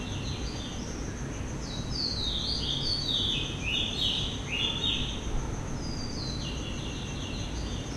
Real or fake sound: real